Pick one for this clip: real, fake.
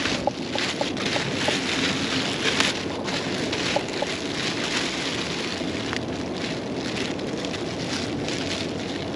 real